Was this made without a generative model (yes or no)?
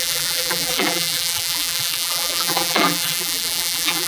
no